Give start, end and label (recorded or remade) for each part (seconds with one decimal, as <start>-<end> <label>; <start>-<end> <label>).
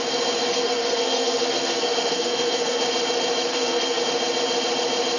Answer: 0.0-0.5 recorded; 0.5-2.8 remade; 2.8-3.5 recorded; 3.5-4.0 remade; 4.0-5.2 recorded